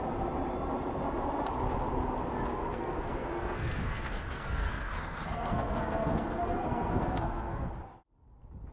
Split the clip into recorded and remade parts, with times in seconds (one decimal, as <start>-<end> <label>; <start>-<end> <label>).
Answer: 0.0-2.5 recorded; 2.5-7.7 remade; 7.7-8.7 recorded

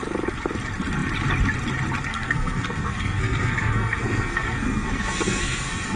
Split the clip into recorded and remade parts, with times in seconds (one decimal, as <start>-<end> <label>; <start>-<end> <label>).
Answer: 0.0-2.1 recorded; 2.1-6.0 remade

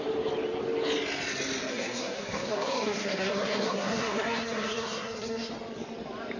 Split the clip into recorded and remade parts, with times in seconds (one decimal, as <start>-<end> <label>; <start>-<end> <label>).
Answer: 0.0-1.7 recorded; 1.7-5.5 remade; 5.5-6.4 recorded

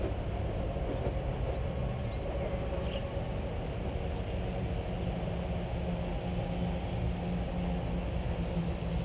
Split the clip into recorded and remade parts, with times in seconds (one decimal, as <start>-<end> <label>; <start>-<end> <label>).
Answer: 0.0-9.0 recorded

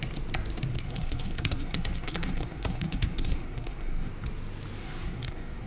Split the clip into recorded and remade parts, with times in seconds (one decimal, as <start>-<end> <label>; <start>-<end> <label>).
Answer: 0.0-0.7 recorded; 0.7-4.1 remade; 4.1-4.8 recorded; 4.8-5.7 remade

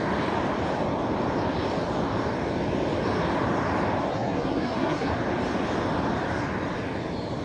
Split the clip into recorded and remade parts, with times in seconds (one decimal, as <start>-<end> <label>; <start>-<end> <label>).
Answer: 0.0-4.1 recorded; 4.1-5.1 remade; 5.1-7.4 recorded

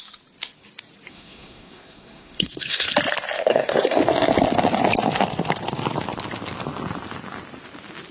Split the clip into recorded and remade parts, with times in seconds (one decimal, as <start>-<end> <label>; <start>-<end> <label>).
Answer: 0.0-1.1 recorded; 1.1-2.9 remade; 2.9-3.5 recorded; 3.5-4.0 remade; 4.0-8.1 recorded